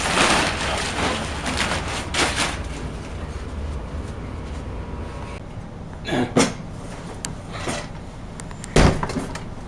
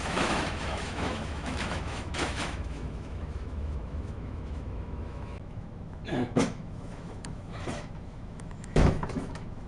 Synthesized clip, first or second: second